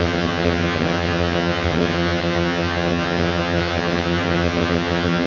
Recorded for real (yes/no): no